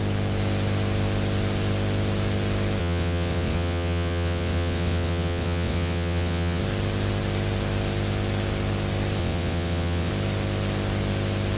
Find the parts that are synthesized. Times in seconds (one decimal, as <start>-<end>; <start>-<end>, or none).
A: 2.8-6.6; 9.2-10.1